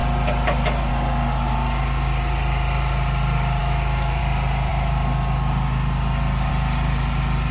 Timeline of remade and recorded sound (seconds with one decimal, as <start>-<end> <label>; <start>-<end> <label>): 0.0-3.6 recorded; 3.6-4.2 remade; 4.2-7.5 recorded